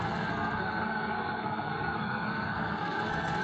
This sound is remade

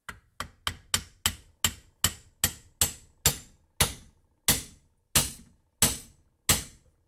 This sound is recorded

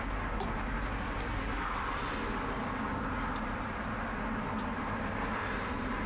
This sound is recorded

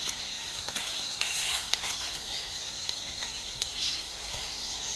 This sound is remade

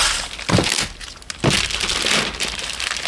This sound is recorded